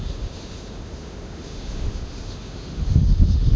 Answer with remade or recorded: remade